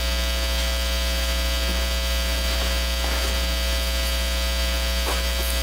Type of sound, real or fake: real